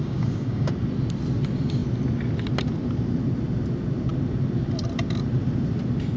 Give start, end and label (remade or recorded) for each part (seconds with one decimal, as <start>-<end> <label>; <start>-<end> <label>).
0.0-0.7 remade; 0.7-6.2 recorded